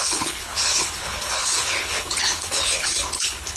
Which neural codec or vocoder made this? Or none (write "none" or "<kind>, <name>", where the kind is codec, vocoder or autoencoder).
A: codec, HILCodec